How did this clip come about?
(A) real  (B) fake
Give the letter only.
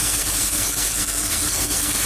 B